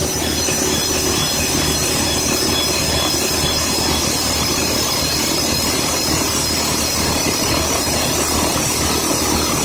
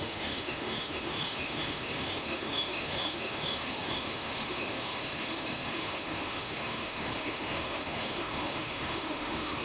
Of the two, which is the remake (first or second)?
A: second